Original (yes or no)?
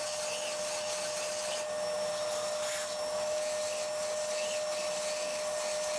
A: yes